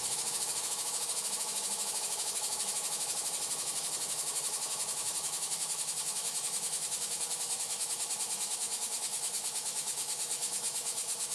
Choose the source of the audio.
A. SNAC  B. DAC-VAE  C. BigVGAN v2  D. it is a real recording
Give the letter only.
B